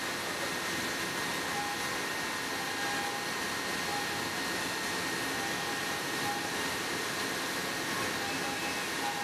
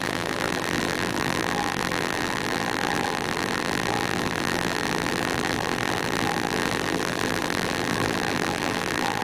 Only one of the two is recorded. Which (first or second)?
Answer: first